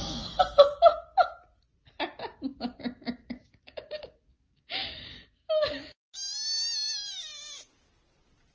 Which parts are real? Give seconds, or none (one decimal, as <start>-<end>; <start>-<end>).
0.0-8.5